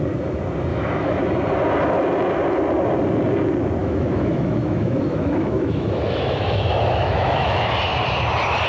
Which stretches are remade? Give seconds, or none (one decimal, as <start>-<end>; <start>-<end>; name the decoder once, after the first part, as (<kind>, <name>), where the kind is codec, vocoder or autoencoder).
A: 0.7-1.2 (autoencoder, DAC-VAE); 3.8-7.7